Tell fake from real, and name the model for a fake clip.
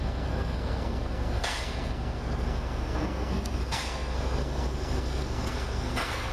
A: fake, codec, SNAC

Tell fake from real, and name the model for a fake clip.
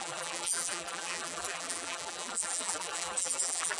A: fake, vocoder, BigVGAN v2